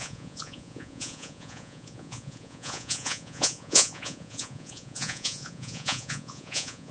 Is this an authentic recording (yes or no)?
no